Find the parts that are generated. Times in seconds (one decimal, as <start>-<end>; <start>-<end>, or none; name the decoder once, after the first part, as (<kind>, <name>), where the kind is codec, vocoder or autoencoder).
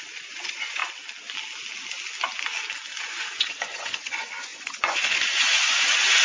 0.0-0.8 (vocoder, Vocos); 3.0-6.2